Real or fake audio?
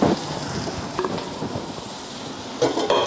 real